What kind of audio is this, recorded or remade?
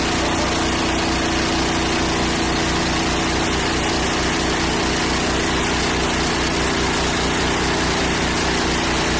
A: recorded